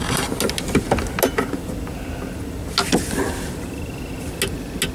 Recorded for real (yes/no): yes